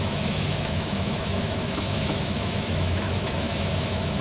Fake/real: fake